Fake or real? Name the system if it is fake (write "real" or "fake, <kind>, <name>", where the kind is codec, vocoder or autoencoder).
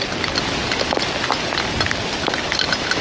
real